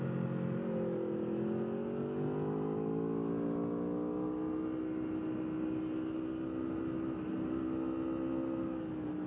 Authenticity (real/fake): real